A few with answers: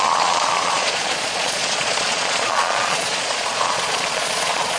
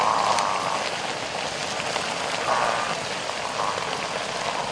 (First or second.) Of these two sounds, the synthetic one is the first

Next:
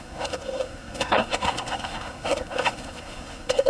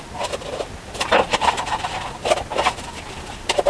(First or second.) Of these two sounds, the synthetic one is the first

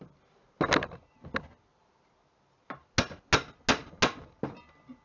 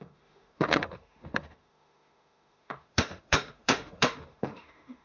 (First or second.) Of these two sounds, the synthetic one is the second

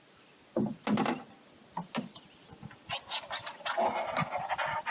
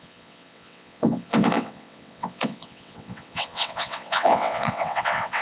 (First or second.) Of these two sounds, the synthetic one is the second